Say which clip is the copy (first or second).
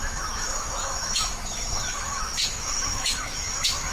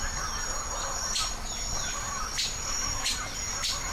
first